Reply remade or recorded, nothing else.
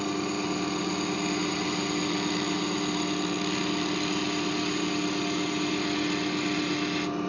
recorded